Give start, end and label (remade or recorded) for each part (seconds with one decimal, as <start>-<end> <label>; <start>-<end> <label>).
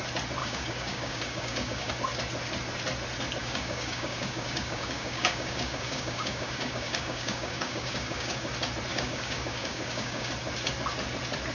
0.0-0.4 recorded; 0.4-1.9 remade; 1.9-3.4 recorded; 3.4-8.5 remade; 8.5-8.9 recorded; 8.9-10.3 remade; 10.3-11.5 recorded